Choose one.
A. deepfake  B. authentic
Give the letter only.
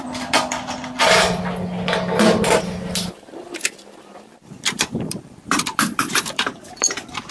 A